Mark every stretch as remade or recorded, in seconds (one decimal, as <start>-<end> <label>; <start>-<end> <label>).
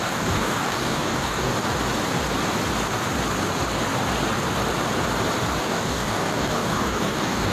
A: 0.0-1.5 remade; 1.5-5.6 recorded; 5.6-7.5 remade